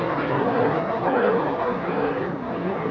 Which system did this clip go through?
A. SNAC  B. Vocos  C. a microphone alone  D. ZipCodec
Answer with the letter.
A